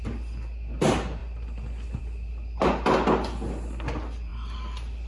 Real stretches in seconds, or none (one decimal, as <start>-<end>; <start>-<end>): 0.0-5.1